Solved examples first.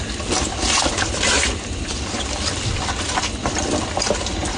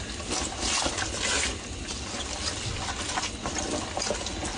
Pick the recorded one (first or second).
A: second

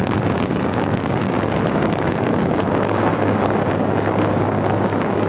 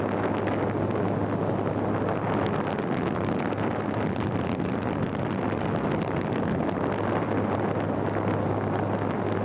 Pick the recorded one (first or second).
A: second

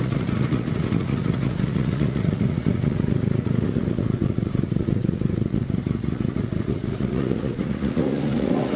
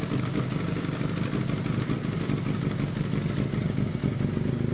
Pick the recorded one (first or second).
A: second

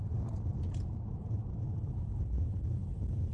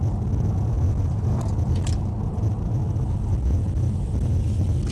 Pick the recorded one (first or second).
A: second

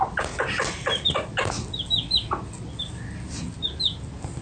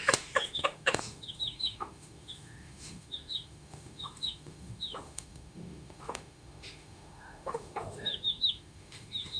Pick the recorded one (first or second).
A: first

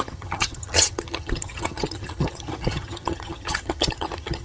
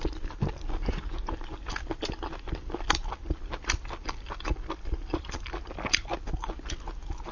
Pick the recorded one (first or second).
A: second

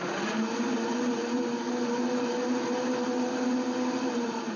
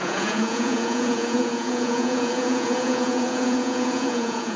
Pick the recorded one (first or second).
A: first